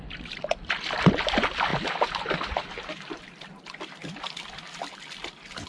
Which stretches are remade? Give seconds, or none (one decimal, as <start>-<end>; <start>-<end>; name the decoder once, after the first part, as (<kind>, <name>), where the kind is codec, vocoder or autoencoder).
1.7-3.2 (vocoder, BigVGAN v2)